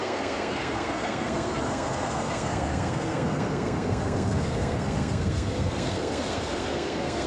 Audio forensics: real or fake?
fake